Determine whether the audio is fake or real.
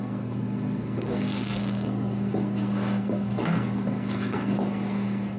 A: fake